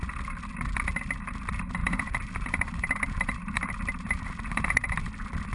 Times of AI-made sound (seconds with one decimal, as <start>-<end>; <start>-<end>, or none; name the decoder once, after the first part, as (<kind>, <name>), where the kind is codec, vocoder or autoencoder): 1.8-5.1 (vocoder, BigVGAN v2)